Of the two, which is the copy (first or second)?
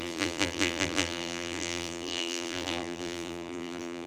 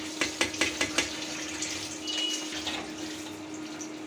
first